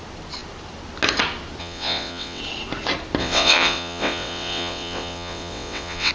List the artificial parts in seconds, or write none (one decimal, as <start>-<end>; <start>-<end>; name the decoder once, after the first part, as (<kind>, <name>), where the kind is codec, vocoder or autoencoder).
1.6-2.4 (vocoder, WaveNeXt); 3.2-6.1